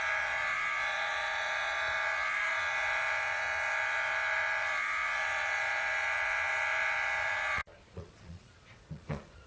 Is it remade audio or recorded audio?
remade